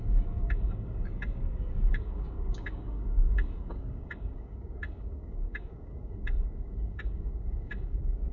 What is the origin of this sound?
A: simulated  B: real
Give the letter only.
A